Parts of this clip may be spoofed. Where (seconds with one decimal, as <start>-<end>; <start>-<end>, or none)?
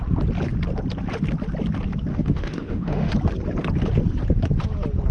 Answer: 2.1-3.1